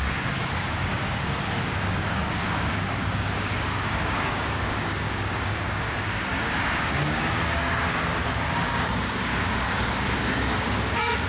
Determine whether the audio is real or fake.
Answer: fake